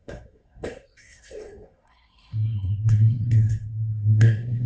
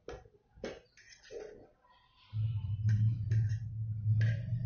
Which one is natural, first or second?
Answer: second